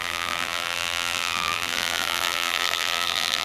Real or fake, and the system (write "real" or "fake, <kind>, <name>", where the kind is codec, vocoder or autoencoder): fake, vocoder, BigVGAN v2